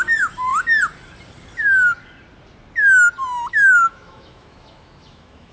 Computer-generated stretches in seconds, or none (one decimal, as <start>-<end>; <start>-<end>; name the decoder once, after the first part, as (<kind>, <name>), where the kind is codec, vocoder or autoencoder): 0.0-0.5 (autoencoder, DAC-VAE); 3.5-5.5